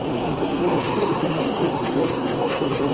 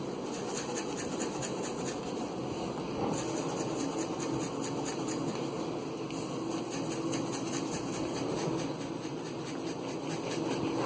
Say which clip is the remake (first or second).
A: first